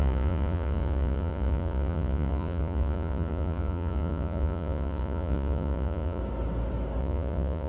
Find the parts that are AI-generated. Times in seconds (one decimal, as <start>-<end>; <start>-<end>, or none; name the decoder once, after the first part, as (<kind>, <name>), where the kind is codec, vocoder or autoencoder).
0.0-6.2 (vocoder, Vocos); 7.0-7.7